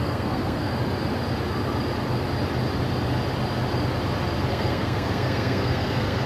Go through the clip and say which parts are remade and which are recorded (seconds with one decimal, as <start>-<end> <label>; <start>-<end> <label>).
0.0-0.7 remade; 0.7-4.5 recorded; 4.5-6.3 remade